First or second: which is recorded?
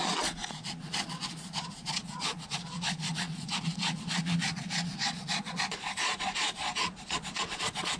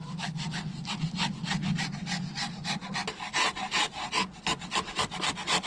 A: second